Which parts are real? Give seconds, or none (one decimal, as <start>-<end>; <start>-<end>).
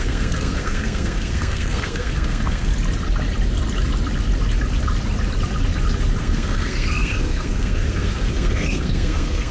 2.7-6.2